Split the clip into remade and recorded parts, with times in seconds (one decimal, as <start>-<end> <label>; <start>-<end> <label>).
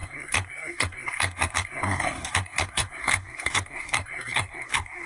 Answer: 0.0-5.1 remade